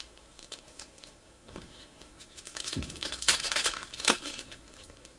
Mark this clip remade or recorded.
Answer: remade